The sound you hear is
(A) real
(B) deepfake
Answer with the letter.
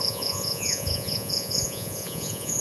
B